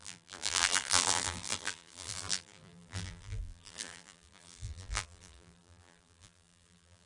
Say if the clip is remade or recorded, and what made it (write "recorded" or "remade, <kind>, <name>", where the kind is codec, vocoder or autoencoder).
remade, vocoder, BigVGAN v2